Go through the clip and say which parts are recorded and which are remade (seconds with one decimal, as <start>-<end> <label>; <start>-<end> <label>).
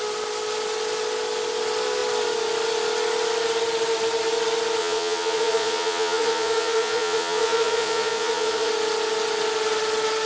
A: 0.0-4.8 recorded; 4.8-8.7 remade; 8.7-10.3 recorded